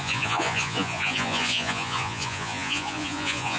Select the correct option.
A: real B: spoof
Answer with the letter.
B